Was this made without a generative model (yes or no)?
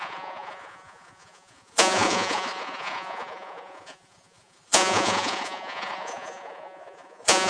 no